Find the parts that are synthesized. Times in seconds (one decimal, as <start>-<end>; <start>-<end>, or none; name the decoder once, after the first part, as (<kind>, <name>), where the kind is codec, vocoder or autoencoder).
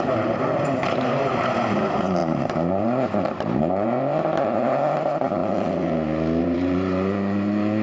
0.0-5.4 (vocoder, BigVGAN v2); 6.4-7.8